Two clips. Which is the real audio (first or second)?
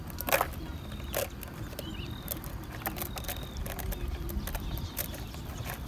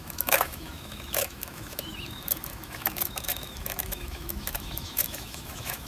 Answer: first